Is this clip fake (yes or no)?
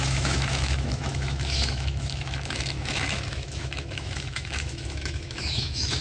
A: yes